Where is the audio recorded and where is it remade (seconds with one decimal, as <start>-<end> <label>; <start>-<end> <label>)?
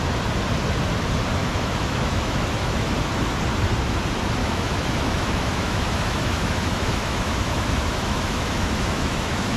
0.0-1.4 recorded; 1.4-2.9 remade; 2.9-4.4 recorded; 4.4-9.6 remade